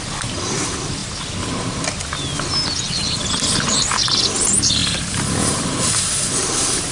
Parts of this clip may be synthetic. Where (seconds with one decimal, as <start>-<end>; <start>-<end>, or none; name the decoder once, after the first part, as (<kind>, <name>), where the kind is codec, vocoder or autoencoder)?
none